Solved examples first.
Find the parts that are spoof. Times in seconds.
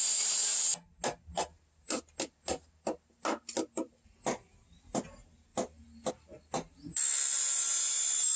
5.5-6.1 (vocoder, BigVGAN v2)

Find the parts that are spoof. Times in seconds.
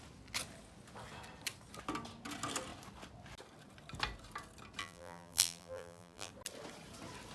4.8-6.3 (vocoder, BigVGAN v2)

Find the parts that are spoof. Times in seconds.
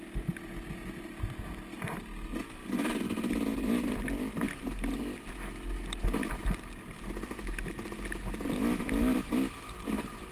none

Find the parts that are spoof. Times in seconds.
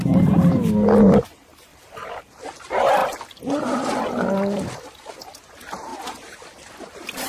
1.7-2.2 (vocoder, BigVGAN v2)